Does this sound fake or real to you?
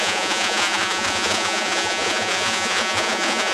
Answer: fake